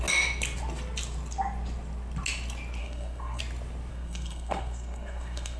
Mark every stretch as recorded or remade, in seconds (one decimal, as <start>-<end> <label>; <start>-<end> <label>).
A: 0.0-2.8 recorded; 2.8-3.4 remade; 3.4-3.9 recorded; 3.9-5.6 remade